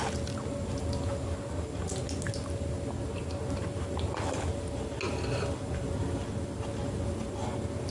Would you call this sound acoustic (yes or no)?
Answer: yes